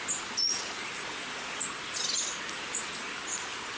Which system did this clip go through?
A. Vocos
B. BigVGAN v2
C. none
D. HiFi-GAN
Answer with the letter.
C